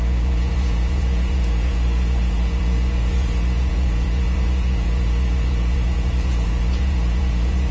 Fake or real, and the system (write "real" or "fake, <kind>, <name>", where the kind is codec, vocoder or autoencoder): fake, vocoder, Vocos